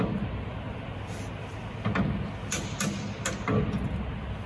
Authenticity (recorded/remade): recorded